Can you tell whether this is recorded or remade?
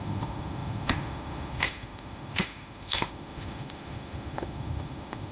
remade